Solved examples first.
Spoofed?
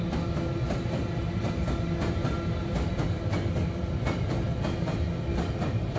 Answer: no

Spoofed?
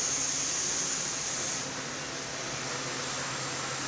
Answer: no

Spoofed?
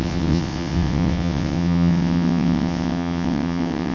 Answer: yes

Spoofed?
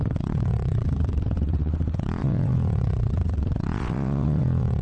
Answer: yes